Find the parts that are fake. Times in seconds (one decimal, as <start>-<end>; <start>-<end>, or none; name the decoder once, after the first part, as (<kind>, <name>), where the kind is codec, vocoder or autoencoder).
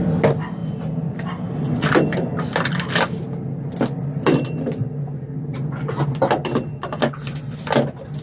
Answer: none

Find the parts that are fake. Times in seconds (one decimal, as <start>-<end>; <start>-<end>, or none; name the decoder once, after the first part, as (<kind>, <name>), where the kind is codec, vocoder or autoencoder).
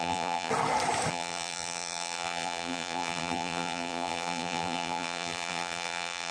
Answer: 0.0-0.5 (vocoder, BigVGAN v2); 1.1-6.3